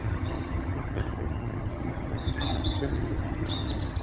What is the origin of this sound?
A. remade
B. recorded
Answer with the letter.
A